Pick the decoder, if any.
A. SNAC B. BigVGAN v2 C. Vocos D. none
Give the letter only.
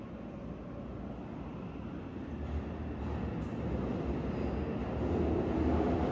D